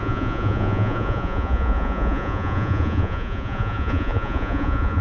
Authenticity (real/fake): fake